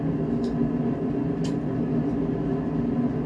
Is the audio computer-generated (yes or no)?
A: no